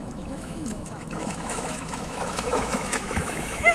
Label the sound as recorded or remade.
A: remade